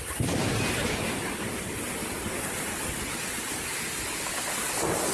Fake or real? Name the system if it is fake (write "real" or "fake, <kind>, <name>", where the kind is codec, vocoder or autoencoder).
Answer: real